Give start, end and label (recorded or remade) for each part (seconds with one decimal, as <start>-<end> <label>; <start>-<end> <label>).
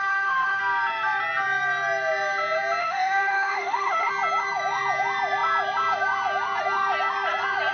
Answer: 0.0-0.6 remade; 0.6-2.8 recorded; 2.8-4.1 remade; 4.1-7.7 recorded